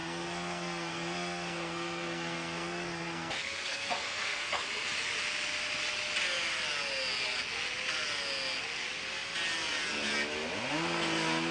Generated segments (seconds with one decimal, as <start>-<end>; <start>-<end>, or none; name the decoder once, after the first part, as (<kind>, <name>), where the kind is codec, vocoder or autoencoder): 0.0-4.6 (codec, SNAC)